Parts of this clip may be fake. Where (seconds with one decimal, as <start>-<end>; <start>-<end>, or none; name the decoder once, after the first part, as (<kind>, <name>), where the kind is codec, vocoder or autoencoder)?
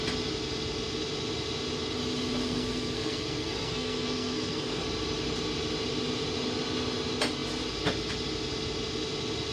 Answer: 2.4-4.8 (codec, SNAC)